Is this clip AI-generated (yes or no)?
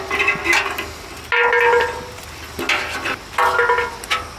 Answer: no